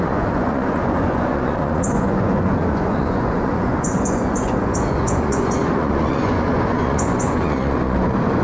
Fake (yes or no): yes